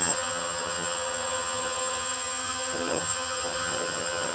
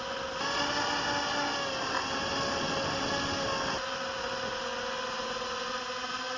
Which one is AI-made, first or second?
first